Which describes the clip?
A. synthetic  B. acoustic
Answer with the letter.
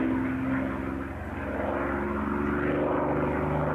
B